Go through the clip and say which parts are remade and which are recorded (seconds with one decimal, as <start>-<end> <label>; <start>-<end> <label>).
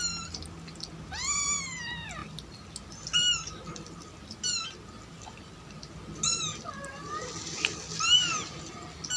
0.0-9.2 recorded